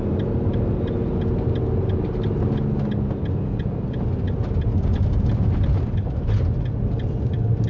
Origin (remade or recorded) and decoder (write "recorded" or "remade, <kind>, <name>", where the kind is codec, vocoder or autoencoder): recorded